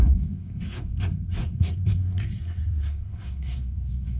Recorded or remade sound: remade